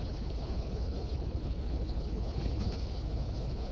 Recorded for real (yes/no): no